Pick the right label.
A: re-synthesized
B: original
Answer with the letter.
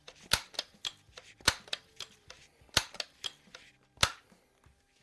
B